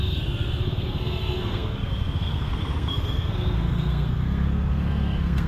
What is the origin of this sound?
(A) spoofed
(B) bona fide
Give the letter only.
A